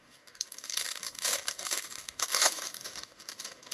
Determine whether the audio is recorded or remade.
remade